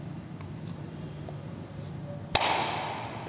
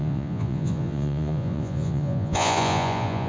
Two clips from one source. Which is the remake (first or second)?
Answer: second